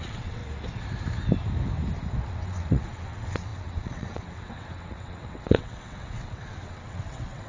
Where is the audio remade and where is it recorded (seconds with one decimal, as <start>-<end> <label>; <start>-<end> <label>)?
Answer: 0.0-0.4 remade; 0.4-2.2 recorded; 2.2-7.5 remade